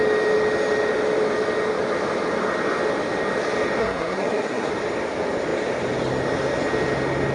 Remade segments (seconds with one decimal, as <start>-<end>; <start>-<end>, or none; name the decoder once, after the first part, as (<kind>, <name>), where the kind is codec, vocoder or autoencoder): 3.8-4.7 (codec, SNAC)